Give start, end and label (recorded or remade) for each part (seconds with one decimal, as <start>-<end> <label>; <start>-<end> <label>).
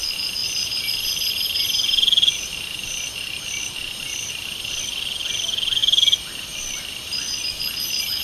0.0-0.4 recorded; 0.4-4.8 remade; 4.8-5.8 recorded; 5.8-8.2 remade